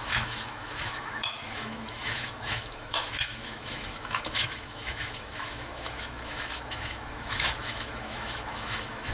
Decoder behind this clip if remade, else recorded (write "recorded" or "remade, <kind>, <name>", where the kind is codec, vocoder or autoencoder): remade, autoencoder, DAC-VAE